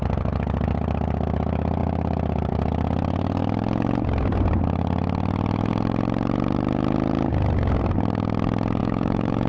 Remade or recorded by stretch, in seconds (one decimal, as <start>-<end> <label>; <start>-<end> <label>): 0.0-8.8 recorded; 8.8-9.5 remade